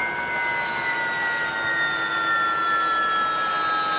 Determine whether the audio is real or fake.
real